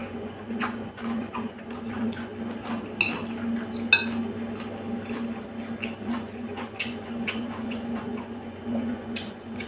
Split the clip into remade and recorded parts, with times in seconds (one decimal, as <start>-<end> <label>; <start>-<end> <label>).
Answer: 0.0-2.3 remade; 2.3-6.0 recorded; 6.0-9.7 remade